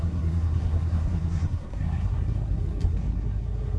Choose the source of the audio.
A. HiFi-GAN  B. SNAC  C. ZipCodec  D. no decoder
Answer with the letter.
B